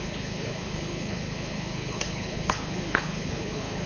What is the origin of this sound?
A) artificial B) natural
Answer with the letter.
A